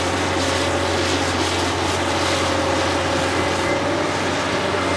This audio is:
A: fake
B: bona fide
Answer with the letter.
B